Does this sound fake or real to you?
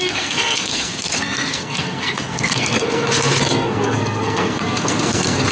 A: fake